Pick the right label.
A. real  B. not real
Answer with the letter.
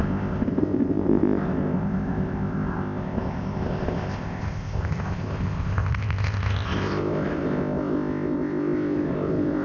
B